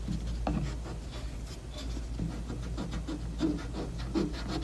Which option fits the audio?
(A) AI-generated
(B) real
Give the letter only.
B